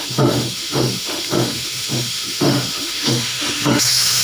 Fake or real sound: fake